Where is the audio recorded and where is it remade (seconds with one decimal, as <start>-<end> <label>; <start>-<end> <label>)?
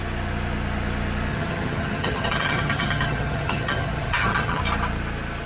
0.0-1.3 recorded; 1.3-4.6 remade; 4.6-5.5 recorded